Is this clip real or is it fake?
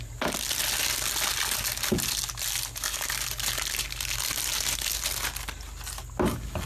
real